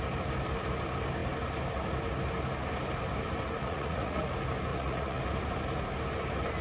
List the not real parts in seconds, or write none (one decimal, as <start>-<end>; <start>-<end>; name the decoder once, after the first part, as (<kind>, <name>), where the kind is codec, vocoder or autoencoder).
3.6-4.3 (vocoder, Vocos); 4.7-5.2